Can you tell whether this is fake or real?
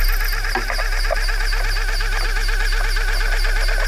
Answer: real